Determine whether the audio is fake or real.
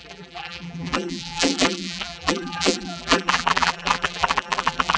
fake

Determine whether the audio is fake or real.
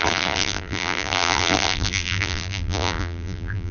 fake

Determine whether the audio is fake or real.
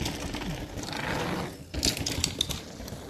real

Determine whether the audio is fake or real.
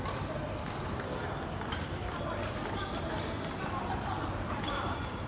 fake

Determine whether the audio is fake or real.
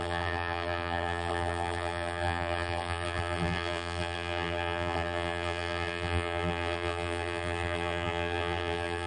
fake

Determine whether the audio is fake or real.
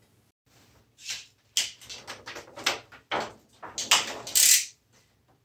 real